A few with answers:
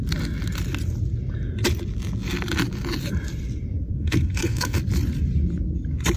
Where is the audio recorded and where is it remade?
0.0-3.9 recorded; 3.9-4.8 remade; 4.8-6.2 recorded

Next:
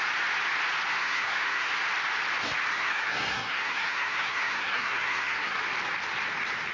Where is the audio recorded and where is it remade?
0.0-1.0 recorded; 1.0-1.7 remade; 1.7-2.7 recorded; 2.7-5.6 remade; 5.6-6.7 recorded

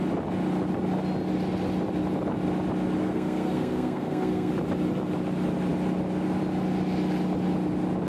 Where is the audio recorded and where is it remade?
0.0-3.0 recorded; 3.0-4.5 remade; 4.5-8.1 recorded